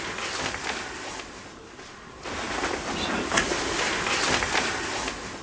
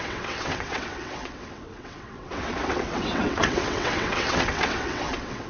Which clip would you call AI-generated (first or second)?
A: second